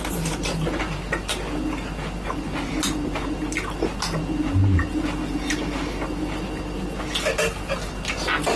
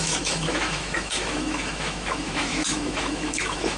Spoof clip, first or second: second